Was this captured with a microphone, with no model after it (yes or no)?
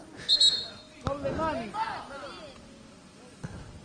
yes